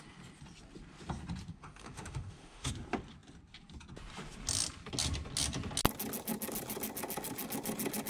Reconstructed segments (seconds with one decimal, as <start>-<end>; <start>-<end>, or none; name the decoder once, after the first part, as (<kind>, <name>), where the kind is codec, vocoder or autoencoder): 1.5-2.7 (autoencoder, DAC-VAE)